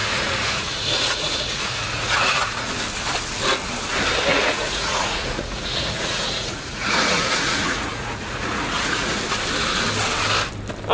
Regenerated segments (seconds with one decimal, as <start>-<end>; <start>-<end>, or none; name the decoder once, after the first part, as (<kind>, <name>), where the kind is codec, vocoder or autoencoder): 0.0-2.7 (vocoder, Vocos); 4.3-9.2